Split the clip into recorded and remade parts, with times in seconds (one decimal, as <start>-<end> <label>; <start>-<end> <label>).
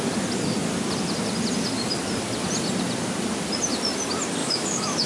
0.0-4.4 recorded; 4.4-5.1 remade